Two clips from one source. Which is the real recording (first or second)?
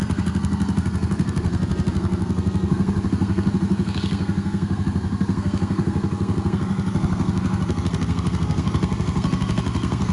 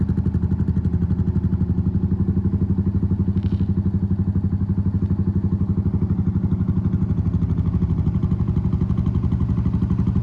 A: second